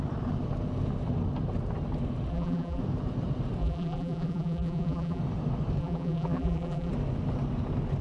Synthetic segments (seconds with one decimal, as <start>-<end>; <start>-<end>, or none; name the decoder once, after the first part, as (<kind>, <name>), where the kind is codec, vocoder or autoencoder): 2.3-2.8 (vocoder, BigVGAN v2); 3.6-5.2; 5.8-6.9

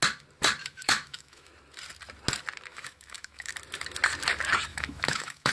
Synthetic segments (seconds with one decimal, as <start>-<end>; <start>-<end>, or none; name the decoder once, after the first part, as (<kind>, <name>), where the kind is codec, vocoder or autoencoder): 0.6-1.5 (autoencoder, DAC-VAE); 2.7-3.5; 4.7-5.5